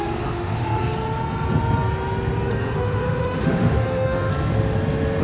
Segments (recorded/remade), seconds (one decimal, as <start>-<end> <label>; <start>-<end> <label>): 0.0-0.8 remade; 0.8-2.5 recorded; 2.5-4.3 remade; 4.3-5.2 recorded

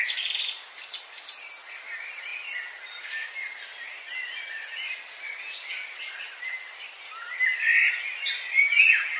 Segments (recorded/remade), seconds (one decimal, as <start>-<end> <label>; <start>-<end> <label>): 0.0-9.2 recorded